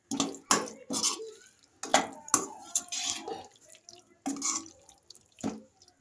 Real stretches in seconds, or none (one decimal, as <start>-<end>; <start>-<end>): 0.0-6.0